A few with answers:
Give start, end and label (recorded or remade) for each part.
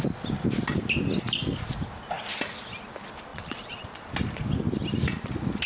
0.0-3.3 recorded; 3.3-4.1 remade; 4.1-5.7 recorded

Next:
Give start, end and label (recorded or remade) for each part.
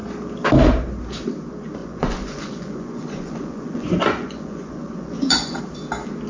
0.0-1.8 recorded; 1.8-5.6 remade; 5.6-6.3 recorded